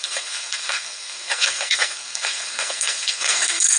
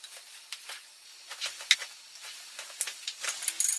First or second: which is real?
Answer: second